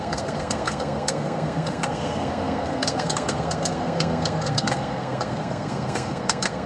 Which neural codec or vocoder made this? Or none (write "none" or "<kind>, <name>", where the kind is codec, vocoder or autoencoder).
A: codec, SNAC